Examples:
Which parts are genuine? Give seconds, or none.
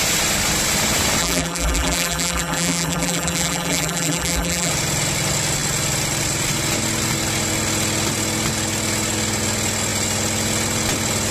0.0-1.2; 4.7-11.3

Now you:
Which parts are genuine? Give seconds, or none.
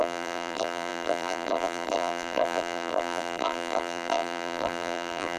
none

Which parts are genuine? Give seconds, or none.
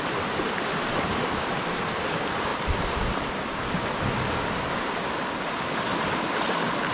0.0-6.9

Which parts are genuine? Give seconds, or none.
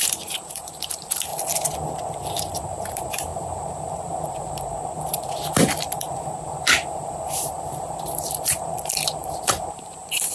1.3-2.6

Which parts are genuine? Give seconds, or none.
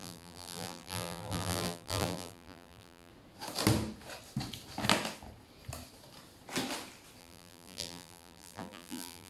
3.1-7.2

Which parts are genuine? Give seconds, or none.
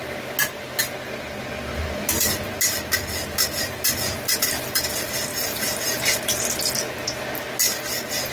0.0-5.3; 6.4-8.3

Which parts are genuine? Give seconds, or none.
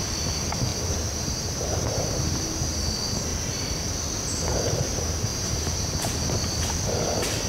0.0-0.7; 2.4-5.3; 6.3-7.5